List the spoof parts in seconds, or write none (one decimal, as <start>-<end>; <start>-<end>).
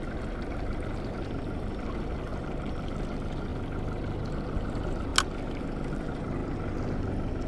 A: 0.0-3.5; 4.3-5.1; 5.6-6.4; 7.0-7.5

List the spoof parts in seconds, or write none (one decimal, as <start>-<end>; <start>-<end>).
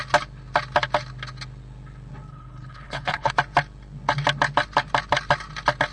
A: 2.3-3.3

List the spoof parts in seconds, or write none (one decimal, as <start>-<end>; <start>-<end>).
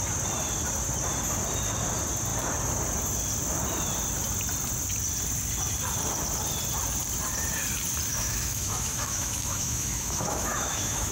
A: 8.1-11.1